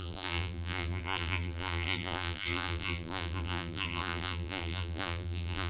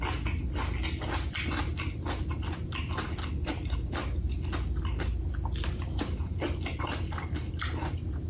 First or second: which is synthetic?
first